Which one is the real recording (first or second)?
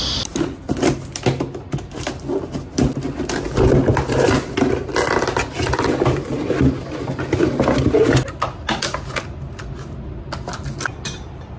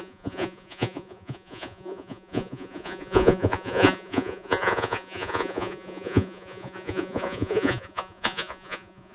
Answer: first